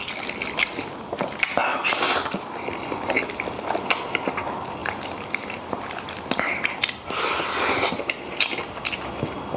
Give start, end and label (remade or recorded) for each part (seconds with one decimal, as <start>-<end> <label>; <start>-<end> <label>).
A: 0.0-1.6 recorded; 1.6-2.1 remade; 2.1-9.6 recorded